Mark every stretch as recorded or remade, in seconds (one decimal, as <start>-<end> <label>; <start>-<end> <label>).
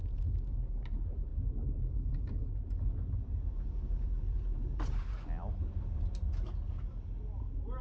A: 0.0-7.8 recorded